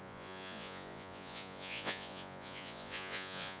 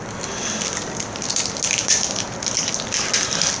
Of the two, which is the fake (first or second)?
first